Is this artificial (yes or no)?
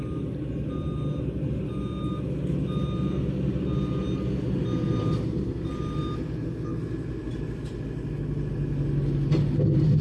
no